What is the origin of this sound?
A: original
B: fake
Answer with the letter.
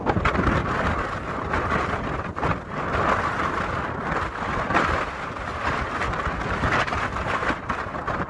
A